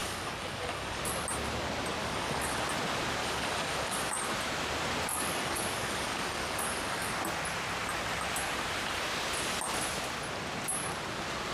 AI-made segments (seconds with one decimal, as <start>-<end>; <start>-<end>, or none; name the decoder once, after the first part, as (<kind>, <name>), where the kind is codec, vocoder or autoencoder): 0.0-1.0 (codec, DAC); 2.0-2.6; 3.2-4.2; 5.1-7.1